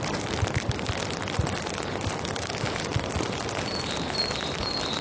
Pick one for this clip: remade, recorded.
recorded